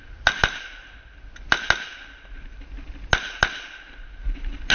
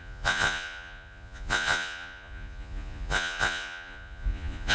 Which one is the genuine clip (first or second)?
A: first